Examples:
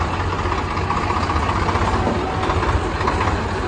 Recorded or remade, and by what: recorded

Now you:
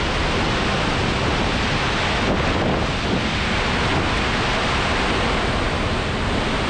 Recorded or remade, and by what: recorded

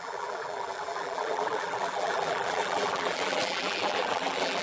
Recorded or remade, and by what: remade, vocoder, BigVGAN v2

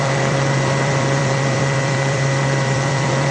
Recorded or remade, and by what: remade, vocoder, BigVGAN v2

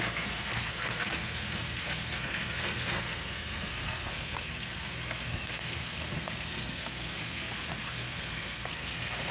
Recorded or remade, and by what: remade, codec, SNAC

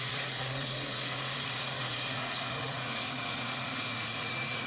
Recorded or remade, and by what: remade, vocoder, Vocos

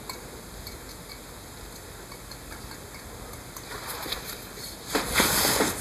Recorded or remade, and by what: recorded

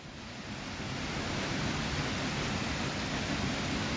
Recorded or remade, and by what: recorded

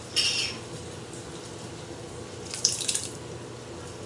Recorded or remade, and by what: recorded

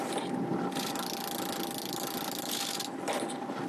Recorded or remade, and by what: recorded